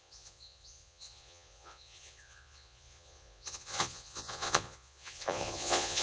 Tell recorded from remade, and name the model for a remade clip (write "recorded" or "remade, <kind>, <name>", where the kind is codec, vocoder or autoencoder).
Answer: remade, vocoder, Vocos